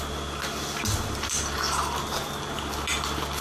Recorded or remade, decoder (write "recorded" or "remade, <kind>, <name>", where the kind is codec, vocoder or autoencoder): recorded